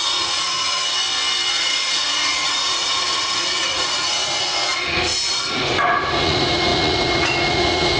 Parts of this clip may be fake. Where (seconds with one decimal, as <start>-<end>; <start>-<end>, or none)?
0.0-1.0; 1.5-8.0